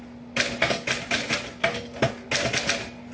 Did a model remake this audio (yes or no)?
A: no